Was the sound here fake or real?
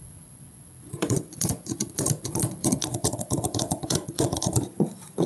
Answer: fake